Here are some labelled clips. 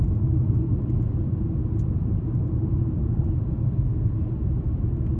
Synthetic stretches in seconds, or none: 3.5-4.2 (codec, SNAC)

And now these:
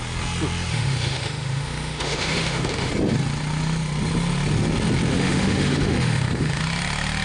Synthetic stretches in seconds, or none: 0.7-2.9 (autoencoder, DAC-VAE); 5.1-6.6

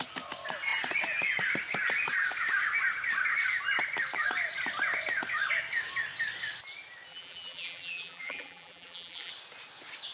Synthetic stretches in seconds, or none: 7.1-9.3 (vocoder, BigVGAN v2)

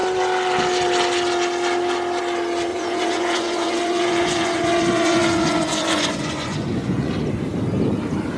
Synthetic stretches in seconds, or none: 2.7-7.1 (vocoder, Vocos)

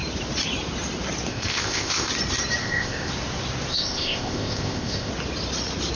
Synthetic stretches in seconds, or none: 1.3-2.1 (codec, ZipCodec); 2.6-3.1; 3.7-5.1

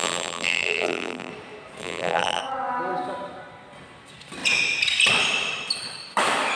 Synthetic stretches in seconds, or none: 0.0-1.3 (vocoder, BigVGAN v2); 1.8-2.4

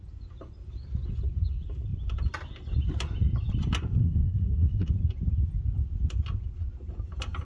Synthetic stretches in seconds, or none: 4.0-4.9 (codec, SNAC)

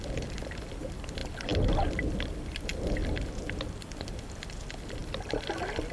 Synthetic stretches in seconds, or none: none